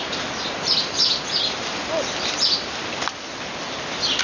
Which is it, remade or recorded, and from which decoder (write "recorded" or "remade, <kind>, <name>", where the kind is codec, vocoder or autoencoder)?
recorded